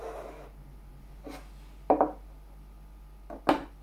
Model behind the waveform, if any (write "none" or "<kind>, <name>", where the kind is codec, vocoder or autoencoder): none